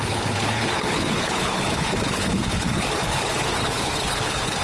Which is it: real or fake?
fake